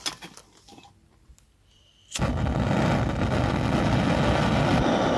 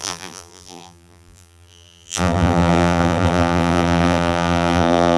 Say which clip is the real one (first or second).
first